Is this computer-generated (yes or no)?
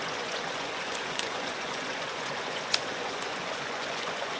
yes